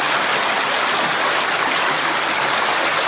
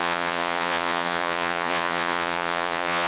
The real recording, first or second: first